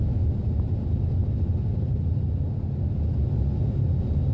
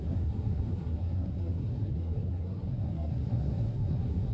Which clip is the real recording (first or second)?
first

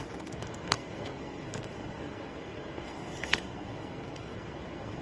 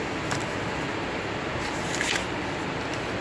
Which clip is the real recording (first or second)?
second